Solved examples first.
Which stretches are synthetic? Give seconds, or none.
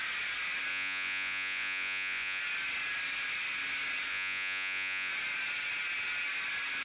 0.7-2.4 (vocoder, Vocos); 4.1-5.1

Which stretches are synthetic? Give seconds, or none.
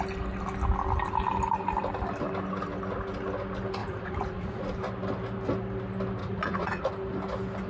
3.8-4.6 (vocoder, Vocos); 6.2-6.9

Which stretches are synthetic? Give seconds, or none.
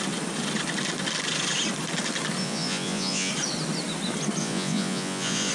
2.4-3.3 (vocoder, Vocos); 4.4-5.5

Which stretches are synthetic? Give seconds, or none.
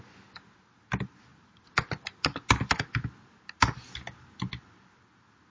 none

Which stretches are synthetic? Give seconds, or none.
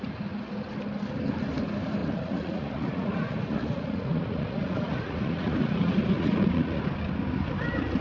2.0-6.8 (vocoder, Vocos)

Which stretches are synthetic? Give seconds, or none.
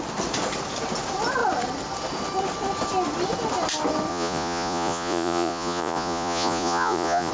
4.1-7.3 (vocoder, Vocos)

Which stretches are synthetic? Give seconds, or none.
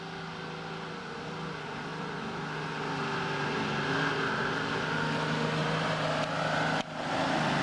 none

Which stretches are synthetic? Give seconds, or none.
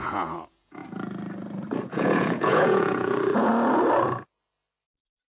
0.0-0.8 (vocoder, Vocos); 1.8-3.5; 5.0-5.4